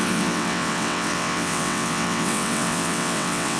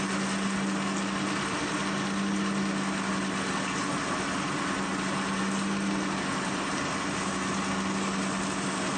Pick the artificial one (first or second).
first